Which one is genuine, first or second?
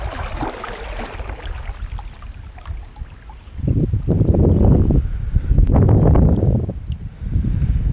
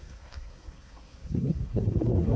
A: first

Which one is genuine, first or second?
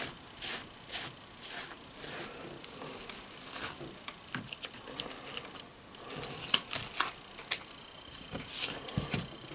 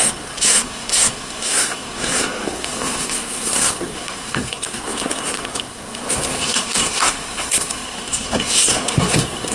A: first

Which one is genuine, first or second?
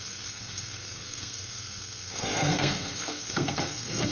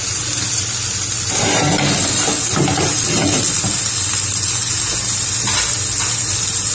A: second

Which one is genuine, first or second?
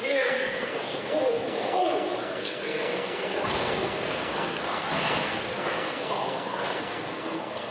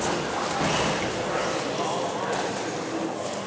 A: second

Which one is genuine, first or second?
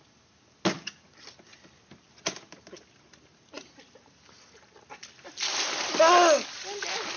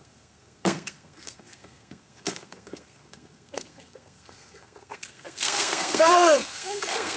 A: first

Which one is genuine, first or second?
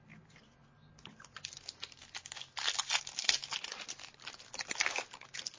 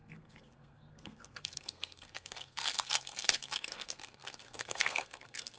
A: first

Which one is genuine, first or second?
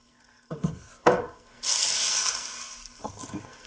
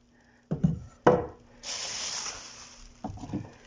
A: second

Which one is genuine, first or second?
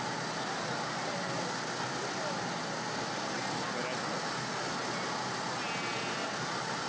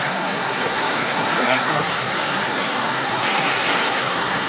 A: first